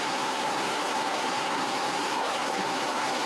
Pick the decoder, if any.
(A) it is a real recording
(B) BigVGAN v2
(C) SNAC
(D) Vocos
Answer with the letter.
C